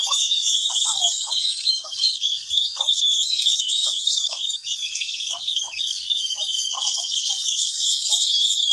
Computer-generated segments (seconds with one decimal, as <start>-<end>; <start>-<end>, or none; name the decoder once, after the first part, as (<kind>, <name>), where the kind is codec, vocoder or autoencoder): 0.0-8.7 (codec, SNAC)